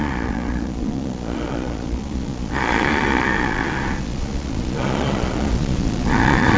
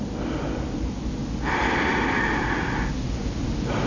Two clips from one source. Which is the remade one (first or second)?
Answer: first